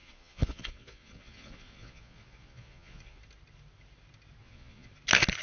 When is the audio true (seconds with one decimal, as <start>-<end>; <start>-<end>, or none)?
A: 3.2-4.4; 4.9-5.4